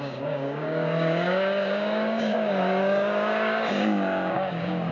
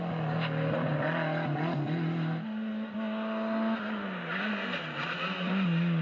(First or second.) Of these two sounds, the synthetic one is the first